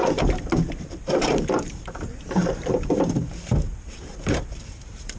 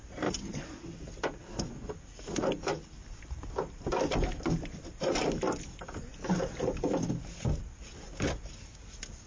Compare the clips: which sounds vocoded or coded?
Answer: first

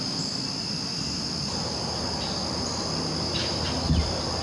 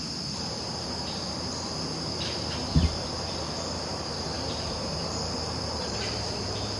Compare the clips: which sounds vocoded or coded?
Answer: second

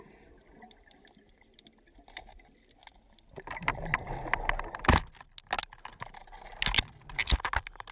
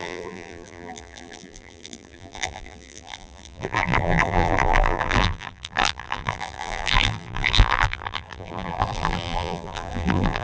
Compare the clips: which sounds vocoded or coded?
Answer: second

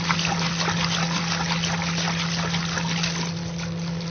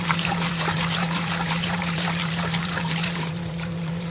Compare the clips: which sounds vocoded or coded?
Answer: second